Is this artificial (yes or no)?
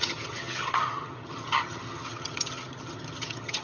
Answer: yes